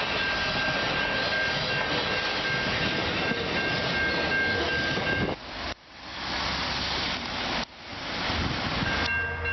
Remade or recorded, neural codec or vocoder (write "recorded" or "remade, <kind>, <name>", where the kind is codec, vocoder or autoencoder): recorded